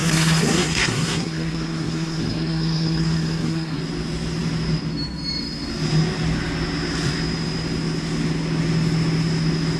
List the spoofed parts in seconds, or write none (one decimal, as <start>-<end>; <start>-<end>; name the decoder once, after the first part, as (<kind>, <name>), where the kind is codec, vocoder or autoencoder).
0.0-3.8 (codec, SNAC)